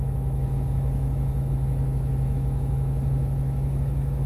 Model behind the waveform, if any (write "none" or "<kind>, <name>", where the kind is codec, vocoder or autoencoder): autoencoder, DAC-VAE